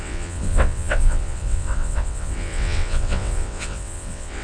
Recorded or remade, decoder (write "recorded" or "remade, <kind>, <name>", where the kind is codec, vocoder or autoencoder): remade, vocoder, WaveNeXt